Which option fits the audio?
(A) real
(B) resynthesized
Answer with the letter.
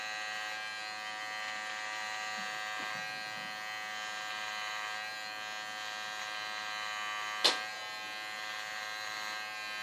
A